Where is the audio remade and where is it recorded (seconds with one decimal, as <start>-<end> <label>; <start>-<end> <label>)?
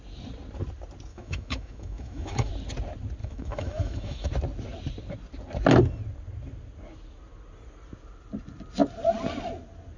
0.0-1.1 recorded; 1.1-2.5 remade; 2.5-3.2 recorded; 3.2-4.3 remade; 4.3-10.0 recorded